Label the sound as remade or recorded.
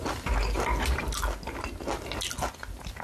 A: recorded